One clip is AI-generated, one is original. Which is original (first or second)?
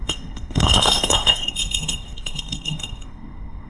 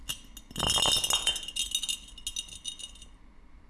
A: second